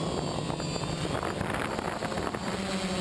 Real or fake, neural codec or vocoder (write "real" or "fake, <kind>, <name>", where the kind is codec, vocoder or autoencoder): real